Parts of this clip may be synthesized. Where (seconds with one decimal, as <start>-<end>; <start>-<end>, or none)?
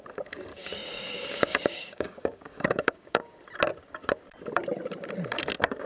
0.5-3.4